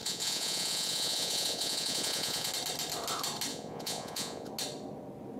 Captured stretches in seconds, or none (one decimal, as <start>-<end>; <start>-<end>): 2.5-3.5; 4.5-5.4